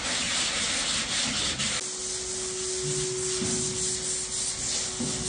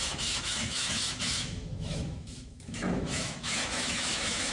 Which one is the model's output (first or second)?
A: second